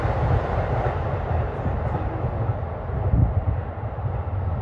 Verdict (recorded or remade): recorded